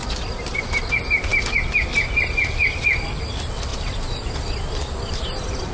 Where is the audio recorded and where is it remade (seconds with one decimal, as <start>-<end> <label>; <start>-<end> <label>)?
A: 0.0-0.9 remade; 0.9-3.7 recorded; 3.7-4.3 remade; 4.3-5.7 recorded